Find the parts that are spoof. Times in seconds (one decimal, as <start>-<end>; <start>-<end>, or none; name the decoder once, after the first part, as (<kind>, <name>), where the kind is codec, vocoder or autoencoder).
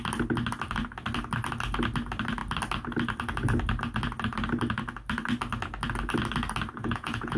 6.8-7.4 (vocoder, Vocos)